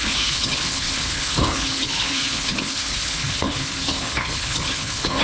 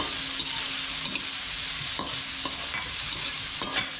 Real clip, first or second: second